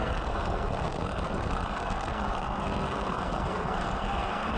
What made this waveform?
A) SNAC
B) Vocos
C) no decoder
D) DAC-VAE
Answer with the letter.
A